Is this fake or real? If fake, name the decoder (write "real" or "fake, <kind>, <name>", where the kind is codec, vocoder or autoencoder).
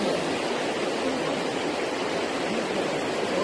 real